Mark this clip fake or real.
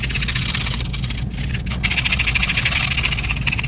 real